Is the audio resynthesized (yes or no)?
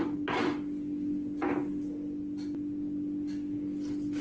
no